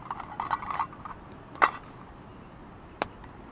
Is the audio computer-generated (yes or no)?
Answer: no